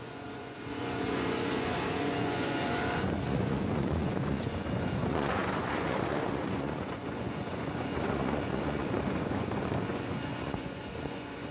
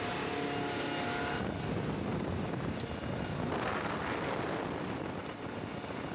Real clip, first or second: second